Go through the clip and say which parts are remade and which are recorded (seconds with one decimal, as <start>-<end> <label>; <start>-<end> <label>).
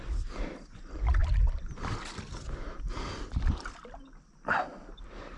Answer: 0.0-5.4 recorded